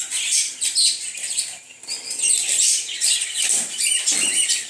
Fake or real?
fake